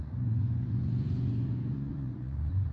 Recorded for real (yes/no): no